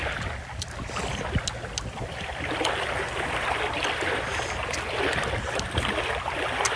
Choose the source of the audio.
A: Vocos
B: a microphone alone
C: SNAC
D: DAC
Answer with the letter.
B